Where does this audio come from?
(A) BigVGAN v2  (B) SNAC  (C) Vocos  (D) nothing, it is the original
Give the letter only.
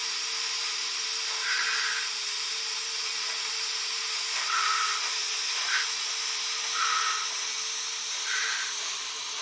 D